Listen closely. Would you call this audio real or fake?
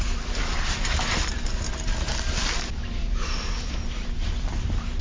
real